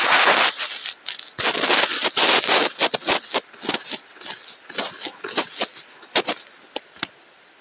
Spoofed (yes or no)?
no